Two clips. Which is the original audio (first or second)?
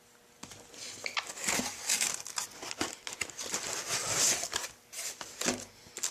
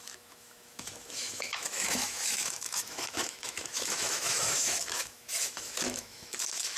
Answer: first